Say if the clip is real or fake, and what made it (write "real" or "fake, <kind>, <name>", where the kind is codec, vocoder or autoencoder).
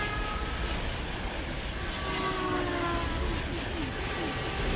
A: real